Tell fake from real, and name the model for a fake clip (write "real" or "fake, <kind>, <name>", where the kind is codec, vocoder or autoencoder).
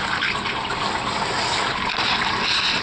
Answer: real